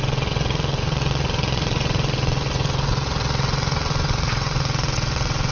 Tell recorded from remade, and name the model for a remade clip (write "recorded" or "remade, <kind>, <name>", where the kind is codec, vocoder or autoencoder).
remade, vocoder, WaveNeXt